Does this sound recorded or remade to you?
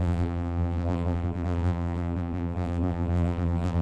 remade